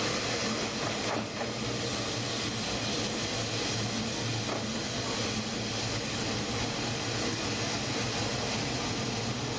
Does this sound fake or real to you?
real